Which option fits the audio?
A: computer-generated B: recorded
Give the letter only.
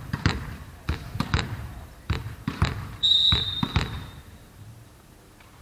A